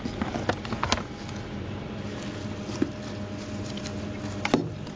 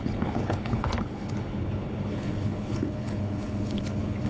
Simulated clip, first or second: second